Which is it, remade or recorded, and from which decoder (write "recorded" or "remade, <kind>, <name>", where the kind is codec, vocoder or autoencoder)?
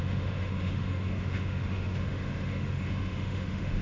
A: remade, autoencoder, DAC-VAE